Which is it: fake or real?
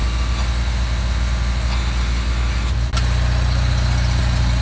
real